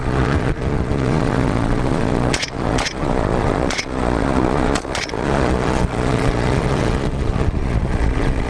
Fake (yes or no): yes